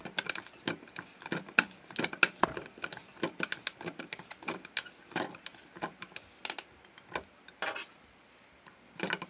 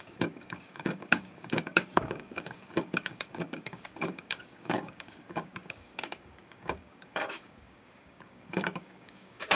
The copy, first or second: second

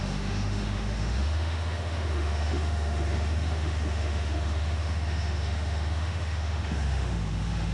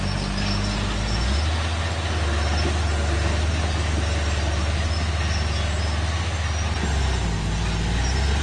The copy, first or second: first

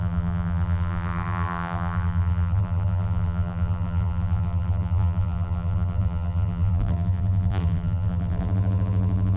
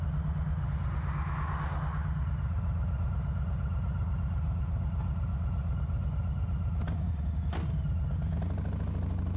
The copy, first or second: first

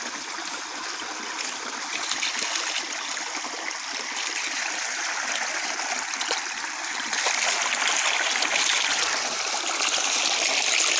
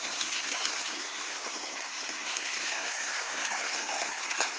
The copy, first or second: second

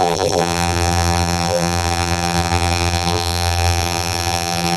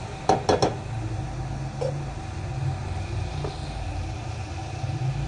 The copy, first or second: first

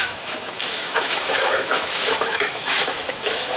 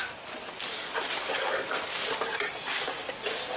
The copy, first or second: first